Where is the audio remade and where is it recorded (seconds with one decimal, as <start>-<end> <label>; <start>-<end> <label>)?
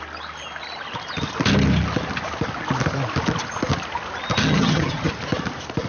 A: 0.0-4.4 recorded; 4.4-5.1 remade; 5.1-5.9 recorded